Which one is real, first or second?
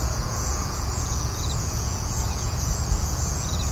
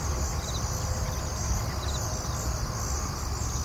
second